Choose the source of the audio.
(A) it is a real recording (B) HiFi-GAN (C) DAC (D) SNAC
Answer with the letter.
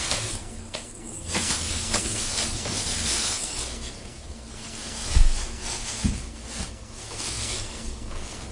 D